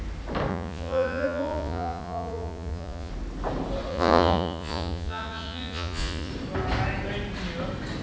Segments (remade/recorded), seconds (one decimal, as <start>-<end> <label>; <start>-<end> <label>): 0.0-0.5 recorded; 0.5-3.1 remade; 3.1-3.9 recorded; 3.9-6.3 remade; 6.3-8.0 recorded